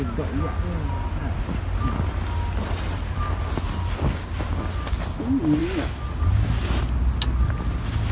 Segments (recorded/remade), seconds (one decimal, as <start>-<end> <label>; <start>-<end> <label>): 0.0-8.1 recorded